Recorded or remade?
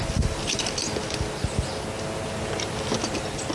recorded